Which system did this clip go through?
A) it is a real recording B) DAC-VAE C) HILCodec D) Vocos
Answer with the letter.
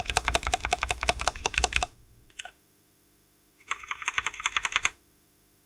B